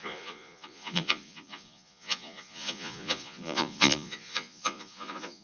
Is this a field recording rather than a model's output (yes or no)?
no